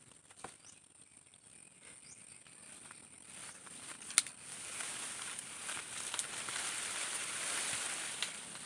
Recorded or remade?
recorded